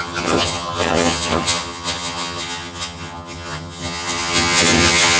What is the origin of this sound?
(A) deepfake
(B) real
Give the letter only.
A